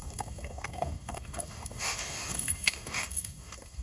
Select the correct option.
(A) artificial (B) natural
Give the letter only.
A